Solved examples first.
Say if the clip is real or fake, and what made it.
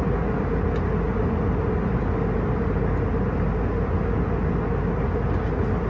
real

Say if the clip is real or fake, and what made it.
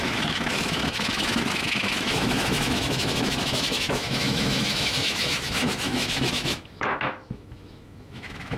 fake, autoencoder, DAC-VAE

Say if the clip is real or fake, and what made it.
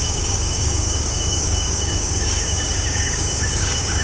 fake, codec, DAC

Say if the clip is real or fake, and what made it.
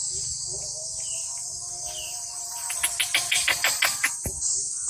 real